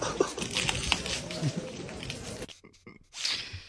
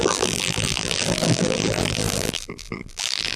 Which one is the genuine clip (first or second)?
first